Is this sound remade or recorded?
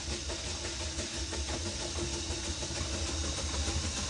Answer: recorded